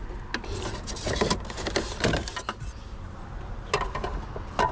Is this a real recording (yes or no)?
yes